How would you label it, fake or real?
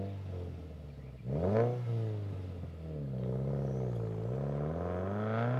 real